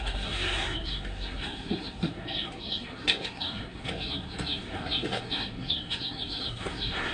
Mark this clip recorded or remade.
remade